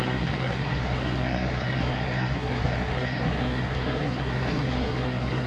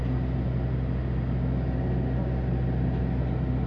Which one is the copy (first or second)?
first